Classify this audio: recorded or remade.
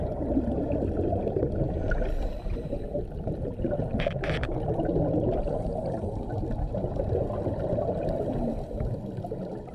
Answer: recorded